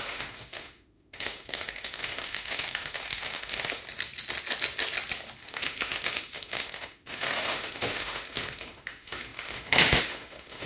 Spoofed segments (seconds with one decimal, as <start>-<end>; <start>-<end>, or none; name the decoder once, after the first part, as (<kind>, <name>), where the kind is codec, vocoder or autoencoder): 0.0-3.8 (autoencoder, DAC-VAE); 5.4-10.7